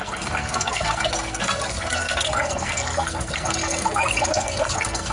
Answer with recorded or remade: remade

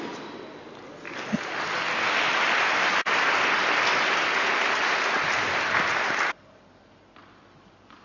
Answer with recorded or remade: recorded